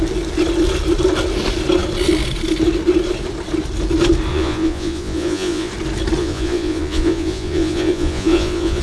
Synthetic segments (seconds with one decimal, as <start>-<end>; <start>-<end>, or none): 4.3-5.7; 6.2-8.8